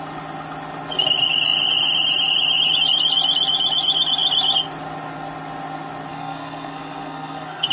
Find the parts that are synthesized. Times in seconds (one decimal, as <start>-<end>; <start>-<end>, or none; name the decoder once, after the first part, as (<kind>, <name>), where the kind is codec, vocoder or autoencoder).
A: 6.1-7.7 (codec, SNAC)